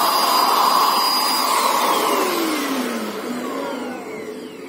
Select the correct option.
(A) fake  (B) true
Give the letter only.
B